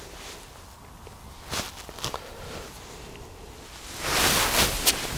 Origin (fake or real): real